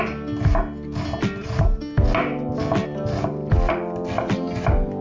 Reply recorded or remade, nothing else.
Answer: recorded